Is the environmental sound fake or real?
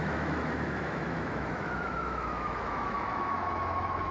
fake